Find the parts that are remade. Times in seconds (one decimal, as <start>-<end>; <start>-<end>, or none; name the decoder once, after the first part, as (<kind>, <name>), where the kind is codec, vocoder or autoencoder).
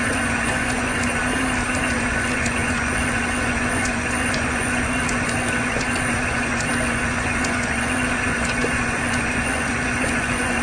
0.0-1.2 (vocoder, Vocos); 1.8-10.6